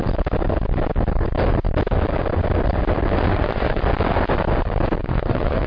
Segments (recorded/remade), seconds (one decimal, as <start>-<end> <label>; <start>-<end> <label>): 0.0-3.3 recorded; 3.3-3.8 remade; 3.8-5.0 recorded; 5.0-5.7 remade